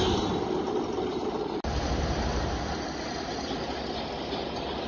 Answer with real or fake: real